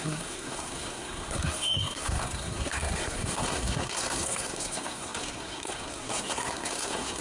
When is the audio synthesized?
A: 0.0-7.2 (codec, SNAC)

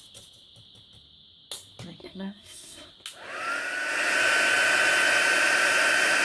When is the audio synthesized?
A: 2.0-2.9 (codec, SNAC)